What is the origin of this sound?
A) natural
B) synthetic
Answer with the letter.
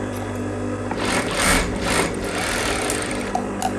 B